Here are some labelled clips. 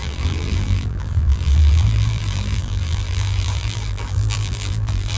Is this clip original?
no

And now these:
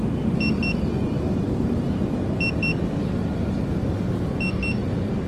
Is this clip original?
yes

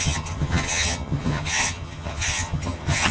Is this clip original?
no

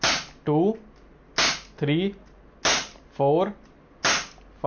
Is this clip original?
yes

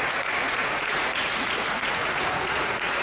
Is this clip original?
no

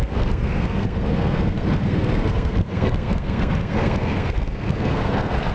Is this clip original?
no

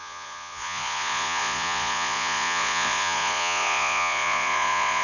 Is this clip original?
no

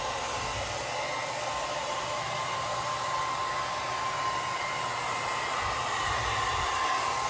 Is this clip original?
yes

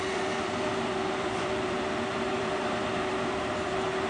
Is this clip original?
no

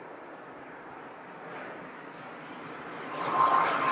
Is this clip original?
yes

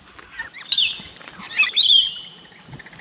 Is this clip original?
yes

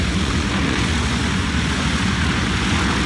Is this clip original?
no